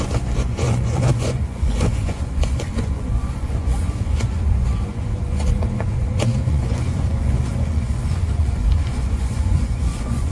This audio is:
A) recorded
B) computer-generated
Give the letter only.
B